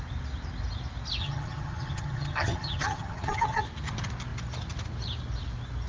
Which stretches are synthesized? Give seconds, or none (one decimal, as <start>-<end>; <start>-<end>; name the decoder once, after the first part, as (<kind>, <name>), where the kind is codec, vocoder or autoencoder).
1.2-3.6 (vocoder, HiFi-GAN)